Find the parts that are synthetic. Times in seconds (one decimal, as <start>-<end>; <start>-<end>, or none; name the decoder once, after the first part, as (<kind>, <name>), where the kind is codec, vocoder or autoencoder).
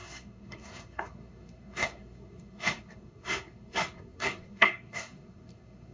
0.0-5.9 (codec, SNAC)